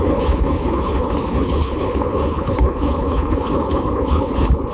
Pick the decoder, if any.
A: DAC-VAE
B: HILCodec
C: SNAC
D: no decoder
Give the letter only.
B